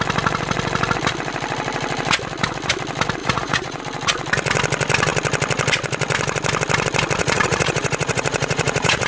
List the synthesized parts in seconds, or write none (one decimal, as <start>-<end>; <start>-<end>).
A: 3.2-3.8; 7.2-9.1